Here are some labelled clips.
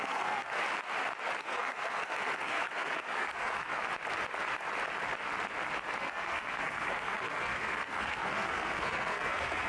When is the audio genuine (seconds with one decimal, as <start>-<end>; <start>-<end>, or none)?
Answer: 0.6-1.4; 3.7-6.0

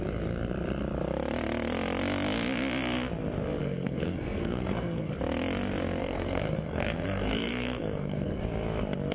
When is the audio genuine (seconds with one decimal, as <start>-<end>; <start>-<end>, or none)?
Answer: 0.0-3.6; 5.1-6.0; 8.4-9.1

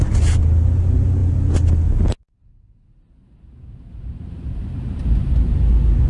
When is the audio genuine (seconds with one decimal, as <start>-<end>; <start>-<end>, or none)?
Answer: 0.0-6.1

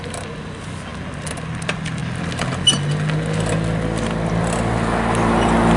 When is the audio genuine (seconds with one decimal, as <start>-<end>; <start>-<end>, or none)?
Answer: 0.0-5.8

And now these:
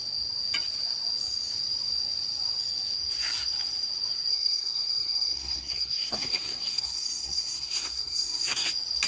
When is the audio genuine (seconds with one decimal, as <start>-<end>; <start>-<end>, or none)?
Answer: 0.0-4.3; 8.7-9.1